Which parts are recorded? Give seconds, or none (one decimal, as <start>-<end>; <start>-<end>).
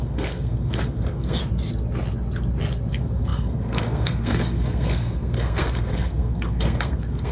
1.4-2.9